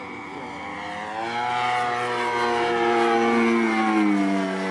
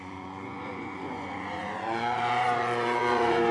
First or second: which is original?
first